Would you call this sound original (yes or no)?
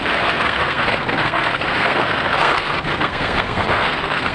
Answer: no